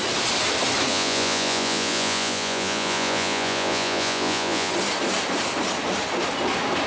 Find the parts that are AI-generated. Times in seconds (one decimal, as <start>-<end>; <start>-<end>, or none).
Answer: 0.9-4.7